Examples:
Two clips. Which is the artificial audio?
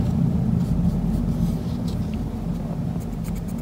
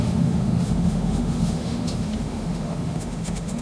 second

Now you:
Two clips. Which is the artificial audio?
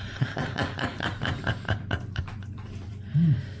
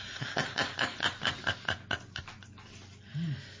first